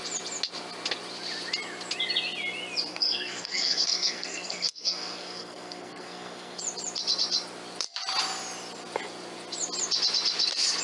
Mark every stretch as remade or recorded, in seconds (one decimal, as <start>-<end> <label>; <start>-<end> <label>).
0.0-2.9 recorded; 2.9-6.6 remade; 6.6-10.8 recorded